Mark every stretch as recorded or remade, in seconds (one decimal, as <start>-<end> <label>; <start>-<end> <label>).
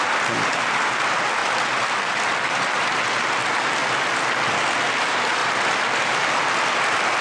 0.0-1.4 recorded; 1.4-2.8 remade; 2.8-5.4 recorded; 5.4-5.9 remade; 5.9-7.2 recorded